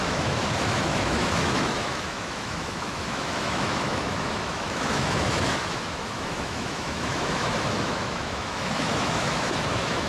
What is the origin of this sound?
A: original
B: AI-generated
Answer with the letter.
B